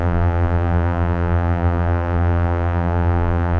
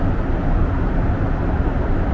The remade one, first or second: first